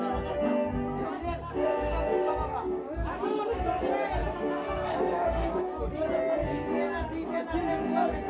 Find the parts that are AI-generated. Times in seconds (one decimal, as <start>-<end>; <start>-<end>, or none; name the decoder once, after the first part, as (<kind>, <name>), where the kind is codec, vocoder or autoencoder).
1.4-3.6 (codec, DAC); 4.2-5.6; 6.4-7.1